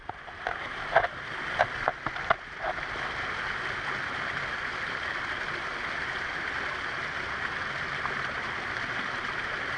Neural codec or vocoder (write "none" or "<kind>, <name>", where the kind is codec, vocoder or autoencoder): none